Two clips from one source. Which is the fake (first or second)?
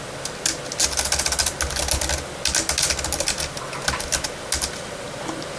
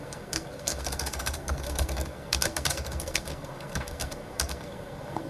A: second